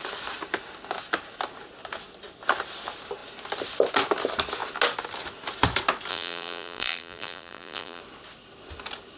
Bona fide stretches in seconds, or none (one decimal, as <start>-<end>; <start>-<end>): 0.0-6.1; 8.0-9.2